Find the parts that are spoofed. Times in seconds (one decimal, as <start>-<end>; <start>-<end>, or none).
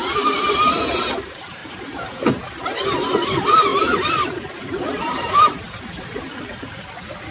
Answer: 0.0-1.6; 2.2-7.3